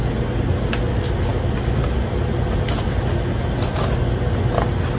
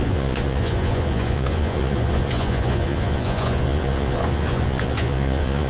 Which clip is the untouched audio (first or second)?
first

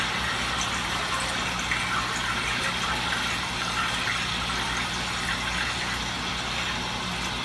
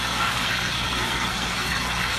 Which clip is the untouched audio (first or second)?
first